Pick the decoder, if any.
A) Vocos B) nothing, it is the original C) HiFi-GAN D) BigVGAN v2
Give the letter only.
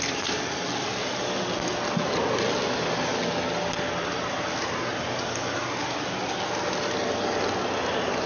B